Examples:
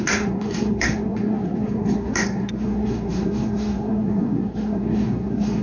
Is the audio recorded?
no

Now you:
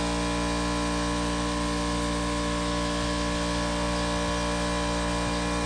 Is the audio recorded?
yes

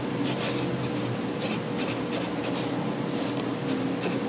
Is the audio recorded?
yes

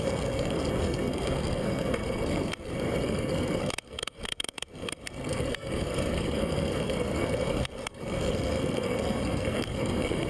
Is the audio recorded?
no